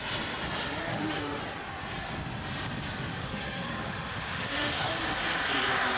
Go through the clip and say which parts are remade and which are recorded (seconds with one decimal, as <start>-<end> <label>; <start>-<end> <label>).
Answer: 0.0-0.9 recorded; 0.9-1.4 remade; 1.4-3.1 recorded; 3.1-4.9 remade; 4.9-6.0 recorded